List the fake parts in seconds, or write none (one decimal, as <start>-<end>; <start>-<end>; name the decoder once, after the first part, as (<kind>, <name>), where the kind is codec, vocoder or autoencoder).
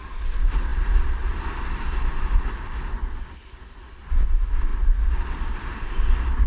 none